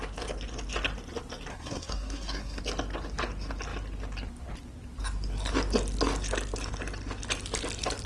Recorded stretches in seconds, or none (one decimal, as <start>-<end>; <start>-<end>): 0.0-1.5; 2.6-8.1